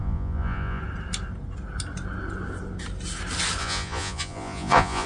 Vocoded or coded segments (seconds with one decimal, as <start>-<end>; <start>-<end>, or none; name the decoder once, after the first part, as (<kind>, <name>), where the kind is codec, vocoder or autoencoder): 0.0-0.8 (vocoder, Vocos); 3.6-5.1